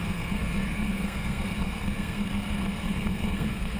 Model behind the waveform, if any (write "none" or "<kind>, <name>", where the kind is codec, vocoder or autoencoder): codec, SNAC